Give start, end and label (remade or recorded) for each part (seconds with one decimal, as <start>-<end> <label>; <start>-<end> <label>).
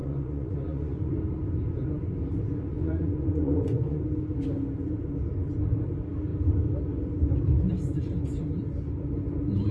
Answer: 0.0-1.1 remade; 1.1-2.7 recorded; 2.7-4.0 remade; 4.0-9.7 recorded